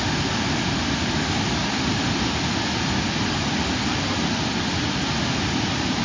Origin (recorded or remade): recorded